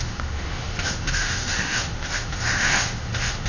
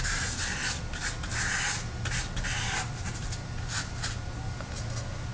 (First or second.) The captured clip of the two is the second